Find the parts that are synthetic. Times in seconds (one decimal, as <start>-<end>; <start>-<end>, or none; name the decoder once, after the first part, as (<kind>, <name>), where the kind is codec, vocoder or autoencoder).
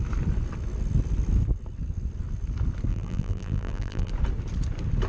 2.9-4.1 (vocoder, BigVGAN v2)